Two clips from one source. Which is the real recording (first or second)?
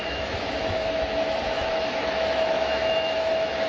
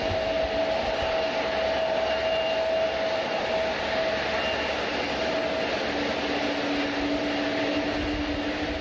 second